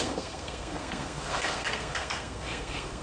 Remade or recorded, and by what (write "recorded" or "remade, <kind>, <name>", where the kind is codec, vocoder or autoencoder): remade, codec, SNAC